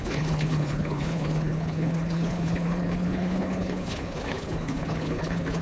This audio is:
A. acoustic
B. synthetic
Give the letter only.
B